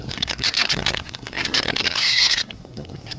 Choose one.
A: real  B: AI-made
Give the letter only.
B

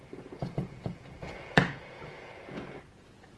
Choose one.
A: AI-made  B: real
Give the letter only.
A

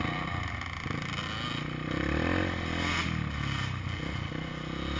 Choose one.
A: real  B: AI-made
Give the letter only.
A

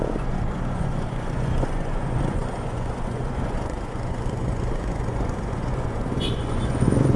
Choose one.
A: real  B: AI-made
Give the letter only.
B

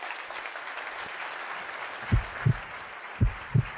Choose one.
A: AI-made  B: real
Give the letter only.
B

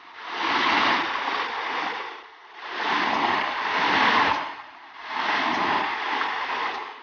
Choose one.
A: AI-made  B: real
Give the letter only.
B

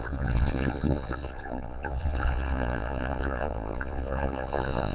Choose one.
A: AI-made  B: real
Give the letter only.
A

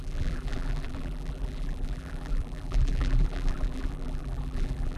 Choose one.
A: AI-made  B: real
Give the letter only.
A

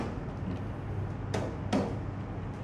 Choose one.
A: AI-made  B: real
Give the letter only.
B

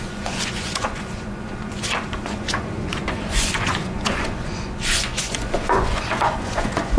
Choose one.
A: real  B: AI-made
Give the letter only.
B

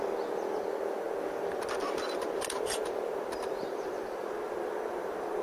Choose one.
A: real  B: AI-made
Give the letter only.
A